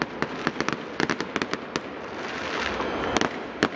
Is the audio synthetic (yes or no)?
no